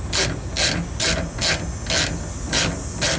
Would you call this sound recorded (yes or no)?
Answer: yes